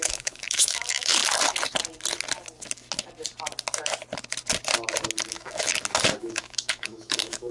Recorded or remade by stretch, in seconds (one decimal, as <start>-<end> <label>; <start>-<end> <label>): 0.0-1.2 remade; 1.2-5.3 recorded; 5.3-5.7 remade; 5.7-6.2 recorded; 6.2-7.5 remade